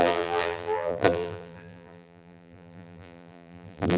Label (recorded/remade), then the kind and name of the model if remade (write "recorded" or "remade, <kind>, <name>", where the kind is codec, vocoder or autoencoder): remade, vocoder, BigVGAN v2